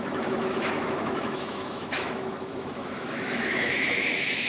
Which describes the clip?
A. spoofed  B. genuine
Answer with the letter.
A